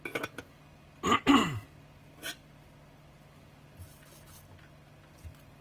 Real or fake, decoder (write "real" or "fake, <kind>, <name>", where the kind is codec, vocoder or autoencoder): real